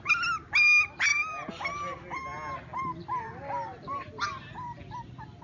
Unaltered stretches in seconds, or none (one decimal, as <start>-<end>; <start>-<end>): 0.0-5.4